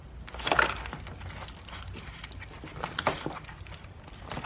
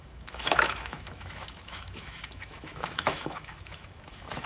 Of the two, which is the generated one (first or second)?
second